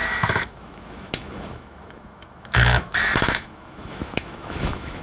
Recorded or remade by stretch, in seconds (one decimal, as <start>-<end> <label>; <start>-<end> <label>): 0.0-5.0 remade